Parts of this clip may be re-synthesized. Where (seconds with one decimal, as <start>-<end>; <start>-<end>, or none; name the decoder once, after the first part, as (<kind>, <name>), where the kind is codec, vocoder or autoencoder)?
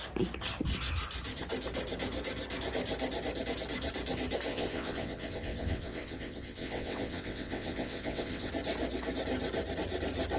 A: 4.5-8.5 (vocoder, WaveNeXt)